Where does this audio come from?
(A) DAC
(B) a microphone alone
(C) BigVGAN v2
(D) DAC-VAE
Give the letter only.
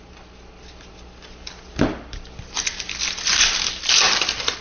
B